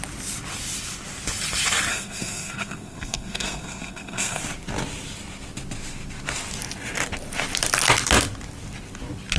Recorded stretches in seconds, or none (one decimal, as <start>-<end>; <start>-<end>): 0.0-1.9; 4.4-9.4